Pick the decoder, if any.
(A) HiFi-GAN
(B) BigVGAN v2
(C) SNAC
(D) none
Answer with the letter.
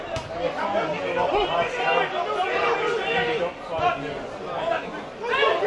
D